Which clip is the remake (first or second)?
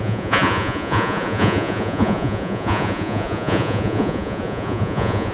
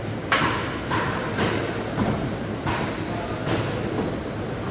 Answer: first